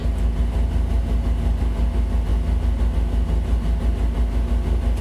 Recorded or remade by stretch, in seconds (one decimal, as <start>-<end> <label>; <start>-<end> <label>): 0.0-5.0 recorded